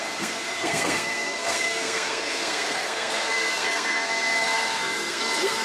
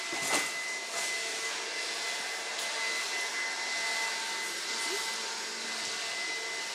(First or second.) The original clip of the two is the second